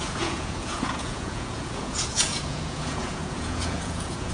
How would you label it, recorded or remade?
remade